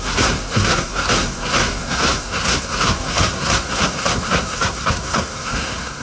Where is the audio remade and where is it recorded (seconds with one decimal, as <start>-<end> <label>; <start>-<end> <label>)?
0.0-6.0 remade

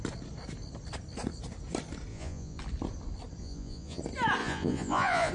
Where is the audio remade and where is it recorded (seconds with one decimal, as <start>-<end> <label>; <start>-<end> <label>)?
0.0-2.1 recorded; 2.1-2.6 remade; 2.6-3.4 recorded; 3.4-4.0 remade; 4.0-4.4 recorded; 4.4-5.3 remade